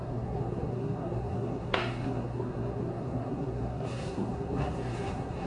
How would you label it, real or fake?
fake